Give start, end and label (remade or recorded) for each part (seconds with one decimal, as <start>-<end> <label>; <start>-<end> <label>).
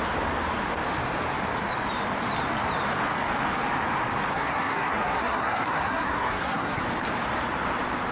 0.0-4.3 recorded; 4.3-6.8 remade; 6.8-8.1 recorded